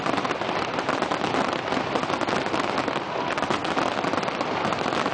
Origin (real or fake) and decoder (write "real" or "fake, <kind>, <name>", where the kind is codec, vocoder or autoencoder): real